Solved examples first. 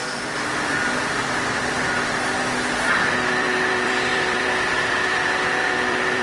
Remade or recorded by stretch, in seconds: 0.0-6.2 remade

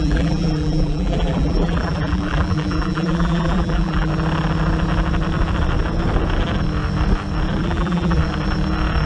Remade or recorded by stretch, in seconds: 0.0-4.1 remade; 4.1-7.6 recorded; 7.6-8.2 remade; 8.2-9.1 recorded

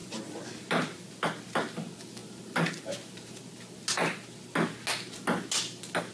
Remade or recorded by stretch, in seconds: 0.0-1.0 remade; 1.0-6.1 recorded

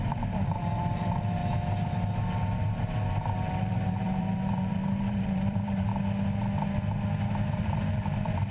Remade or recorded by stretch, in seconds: 0.0-1.4 remade; 1.4-3.6 recorded; 3.6-5.9 remade; 5.9-7.5 recorded; 7.5-8.5 remade

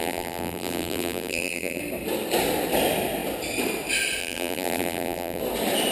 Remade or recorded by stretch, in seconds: 0.0-1.8 remade; 1.8-4.2 recorded; 4.2-5.4 remade; 5.4-5.9 recorded

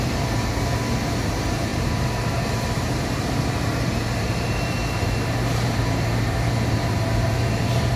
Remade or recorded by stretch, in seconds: 0.0-8.0 remade

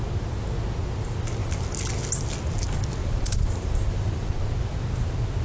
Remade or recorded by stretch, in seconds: 0.0-3.0 recorded; 3.0-4.3 remade; 4.3-5.4 recorded